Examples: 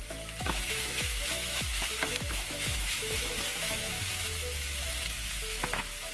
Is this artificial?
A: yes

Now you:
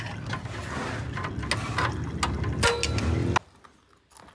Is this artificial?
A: no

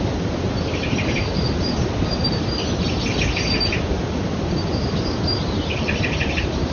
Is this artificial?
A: no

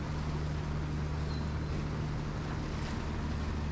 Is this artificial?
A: no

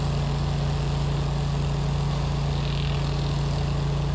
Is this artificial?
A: no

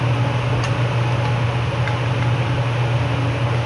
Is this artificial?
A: no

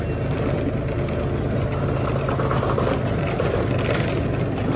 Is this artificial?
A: no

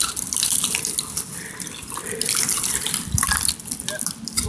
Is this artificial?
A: yes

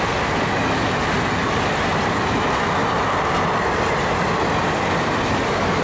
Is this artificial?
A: no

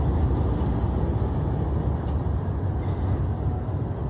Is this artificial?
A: no